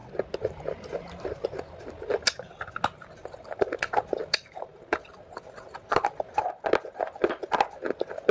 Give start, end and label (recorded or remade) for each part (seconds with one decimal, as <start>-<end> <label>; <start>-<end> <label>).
0.0-8.3 recorded